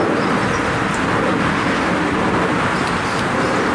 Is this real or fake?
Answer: real